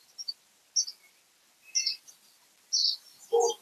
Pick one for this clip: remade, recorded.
recorded